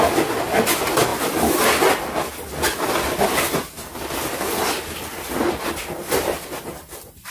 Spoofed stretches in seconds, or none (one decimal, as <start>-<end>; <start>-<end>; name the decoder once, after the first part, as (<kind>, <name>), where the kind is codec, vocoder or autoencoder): none